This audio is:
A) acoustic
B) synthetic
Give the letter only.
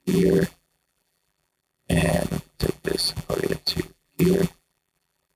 B